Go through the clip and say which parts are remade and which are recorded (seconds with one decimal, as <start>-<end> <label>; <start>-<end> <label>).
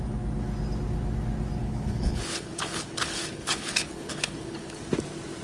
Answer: 0.0-1.6 recorded; 1.6-4.8 remade; 4.8-5.4 recorded